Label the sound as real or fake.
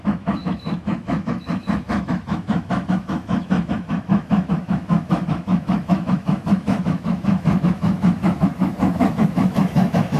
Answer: fake